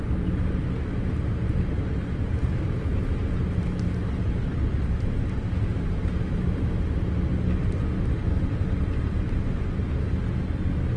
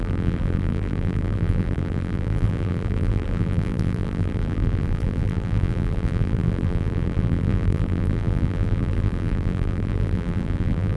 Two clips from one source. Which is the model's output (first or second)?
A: second